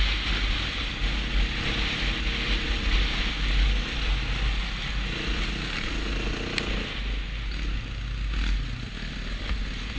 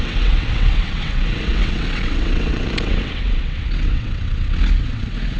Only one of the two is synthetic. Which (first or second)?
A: second